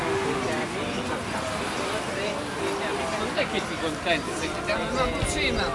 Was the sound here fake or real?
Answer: real